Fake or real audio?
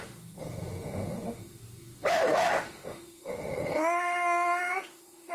fake